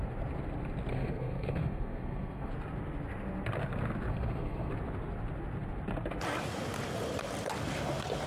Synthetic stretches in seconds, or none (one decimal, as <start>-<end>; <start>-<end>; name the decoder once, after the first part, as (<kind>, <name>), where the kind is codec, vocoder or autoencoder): 0.9-2.5 (codec, SNAC); 4.1-4.7